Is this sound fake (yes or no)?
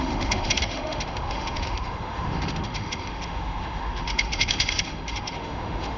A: yes